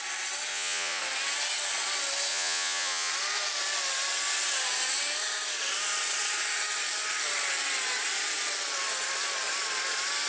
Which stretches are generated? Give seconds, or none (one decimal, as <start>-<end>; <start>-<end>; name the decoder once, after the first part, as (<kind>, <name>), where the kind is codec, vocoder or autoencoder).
0.5-1.0 (vocoder, Vocos); 2.3-3.1